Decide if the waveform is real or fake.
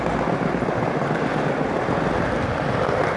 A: real